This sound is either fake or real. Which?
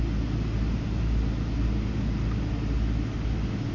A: real